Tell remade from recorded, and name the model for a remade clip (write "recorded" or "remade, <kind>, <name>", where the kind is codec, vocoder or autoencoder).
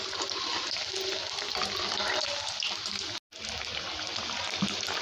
recorded